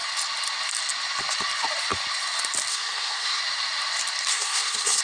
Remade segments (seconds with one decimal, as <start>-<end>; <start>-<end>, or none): 2.7-3.4; 4.3-5.0